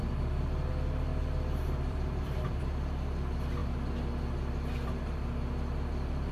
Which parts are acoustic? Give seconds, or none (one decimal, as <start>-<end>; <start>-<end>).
0.0-1.1; 2.6-6.3